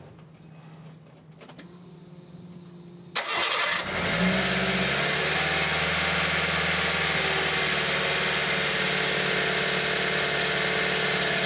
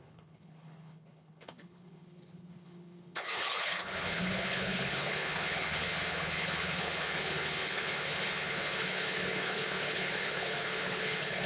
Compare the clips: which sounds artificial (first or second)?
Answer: second